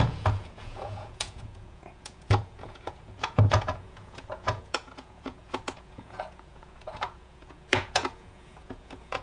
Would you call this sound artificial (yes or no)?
yes